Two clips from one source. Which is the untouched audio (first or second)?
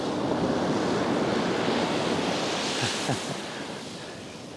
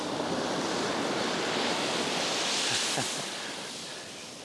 first